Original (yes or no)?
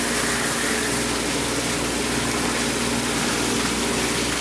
yes